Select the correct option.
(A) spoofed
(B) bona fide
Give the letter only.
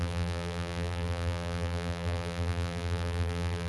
A